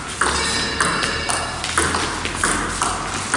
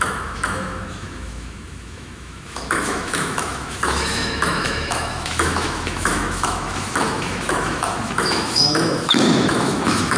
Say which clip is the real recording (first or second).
first